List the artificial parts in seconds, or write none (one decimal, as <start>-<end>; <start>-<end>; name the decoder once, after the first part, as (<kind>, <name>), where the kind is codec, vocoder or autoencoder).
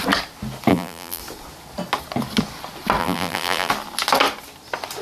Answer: 0.7-1.2 (vocoder, BigVGAN v2); 3.0-3.7